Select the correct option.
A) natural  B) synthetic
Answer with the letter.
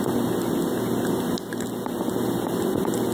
A